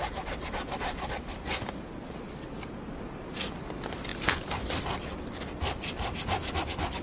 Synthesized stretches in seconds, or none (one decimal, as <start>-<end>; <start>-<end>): none